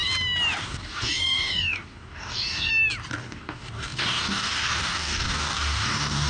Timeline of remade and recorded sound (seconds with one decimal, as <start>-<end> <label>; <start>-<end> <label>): 0.0-0.6 recorded; 0.6-2.7 remade; 2.7-3.2 recorded; 3.2-6.3 remade

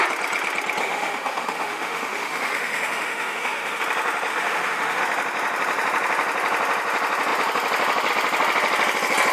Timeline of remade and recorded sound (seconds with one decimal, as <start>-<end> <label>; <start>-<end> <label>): 0.0-0.8 recorded; 0.8-3.8 remade; 3.8-4.3 recorded; 4.3-5.0 remade; 5.0-9.3 recorded

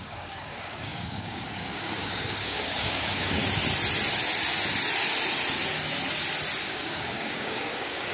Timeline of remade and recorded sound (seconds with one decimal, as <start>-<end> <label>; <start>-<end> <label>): 0.0-3.4 remade; 3.4-6.6 recorded; 6.6-8.1 remade